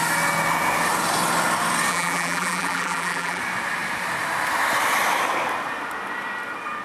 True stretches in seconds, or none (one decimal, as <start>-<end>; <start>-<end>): 0.0-1.9; 3.4-6.8